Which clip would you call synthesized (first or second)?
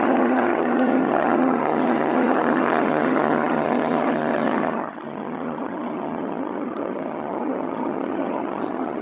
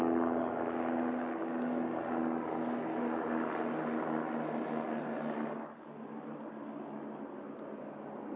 first